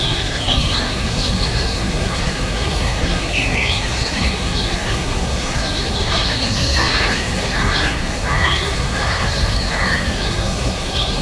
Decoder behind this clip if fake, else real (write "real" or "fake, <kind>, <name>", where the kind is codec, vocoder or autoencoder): fake, codec, SNAC